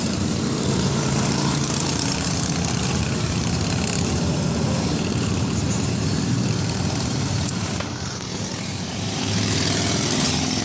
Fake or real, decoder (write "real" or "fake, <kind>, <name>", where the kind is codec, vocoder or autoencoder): fake, vocoder, BigVGAN v2